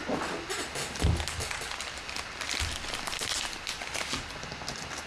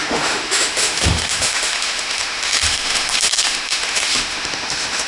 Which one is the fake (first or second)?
second